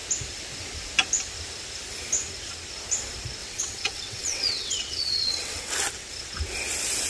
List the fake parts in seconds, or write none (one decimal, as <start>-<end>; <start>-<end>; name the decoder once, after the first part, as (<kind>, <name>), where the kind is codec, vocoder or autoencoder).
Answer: 3.4-5.6 (vocoder, WaveNeXt)